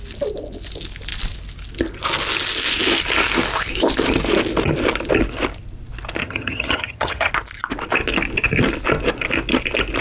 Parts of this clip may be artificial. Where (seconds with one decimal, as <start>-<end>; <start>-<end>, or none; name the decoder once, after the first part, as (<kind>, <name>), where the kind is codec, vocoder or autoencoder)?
6.2-7.3 (vocoder, HiFi-GAN)